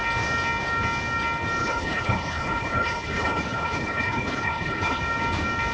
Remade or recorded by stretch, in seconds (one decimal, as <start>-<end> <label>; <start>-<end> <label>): 0.0-1.6 recorded; 1.6-5.0 remade; 5.0-5.7 recorded